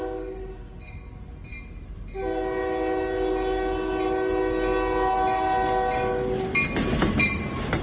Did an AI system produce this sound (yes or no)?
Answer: no